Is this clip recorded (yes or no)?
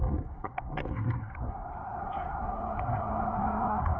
no